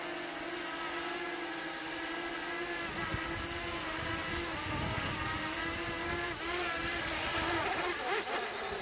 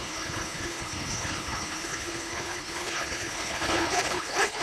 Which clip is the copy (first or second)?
second